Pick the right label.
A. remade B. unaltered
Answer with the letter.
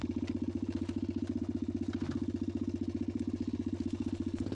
B